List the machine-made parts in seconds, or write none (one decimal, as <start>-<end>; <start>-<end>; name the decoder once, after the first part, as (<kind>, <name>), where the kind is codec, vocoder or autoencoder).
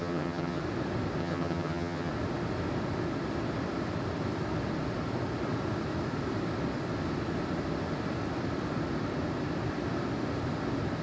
0.0-0.6 (vocoder, HiFi-GAN); 1.2-2.1